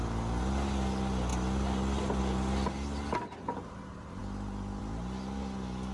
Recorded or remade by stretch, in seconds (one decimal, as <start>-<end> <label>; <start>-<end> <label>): 0.0-5.9 recorded

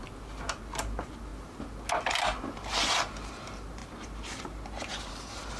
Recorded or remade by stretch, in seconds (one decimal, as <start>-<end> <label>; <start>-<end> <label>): 0.0-5.6 recorded

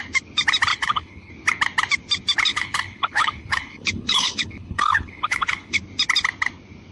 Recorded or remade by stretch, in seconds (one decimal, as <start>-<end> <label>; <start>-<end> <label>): 0.0-0.7 recorded; 0.7-1.3 remade; 1.3-2.5 recorded; 2.5-5.8 remade; 5.8-6.9 recorded

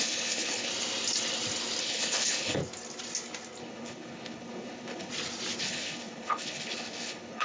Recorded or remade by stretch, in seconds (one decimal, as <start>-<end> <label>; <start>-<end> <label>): 0.0-0.7 remade; 0.7-1.8 recorded; 1.8-2.6 remade; 2.6-3.6 recorded; 3.6-5.1 remade; 5.1-5.6 recorded; 5.6-7.4 remade